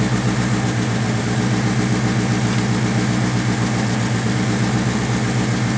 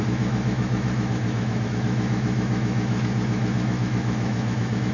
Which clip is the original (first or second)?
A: first